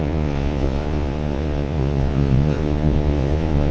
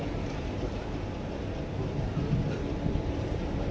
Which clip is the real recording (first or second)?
second